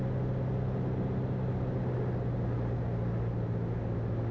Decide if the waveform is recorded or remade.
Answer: recorded